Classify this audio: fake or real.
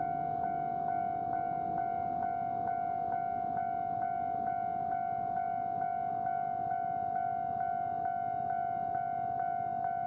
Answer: real